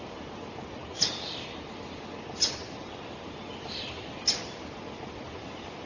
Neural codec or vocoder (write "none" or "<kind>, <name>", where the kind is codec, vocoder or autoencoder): none